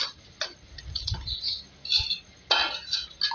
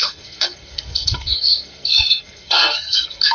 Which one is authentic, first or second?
first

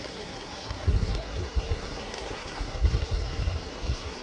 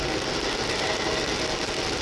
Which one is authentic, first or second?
second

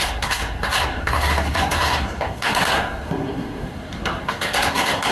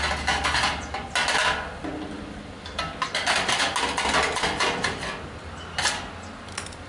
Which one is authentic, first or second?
second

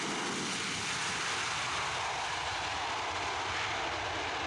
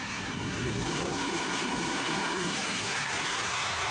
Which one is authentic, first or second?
first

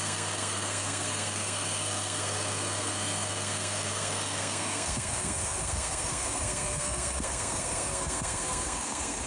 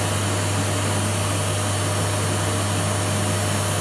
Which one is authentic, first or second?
second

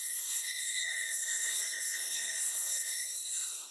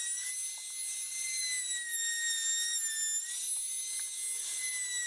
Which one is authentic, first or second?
second